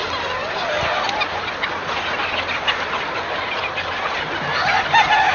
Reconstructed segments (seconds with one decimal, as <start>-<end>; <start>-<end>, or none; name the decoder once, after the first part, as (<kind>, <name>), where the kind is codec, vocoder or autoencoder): none